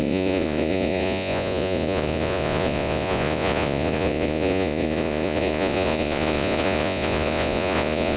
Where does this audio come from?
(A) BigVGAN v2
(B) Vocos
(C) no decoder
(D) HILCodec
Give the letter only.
B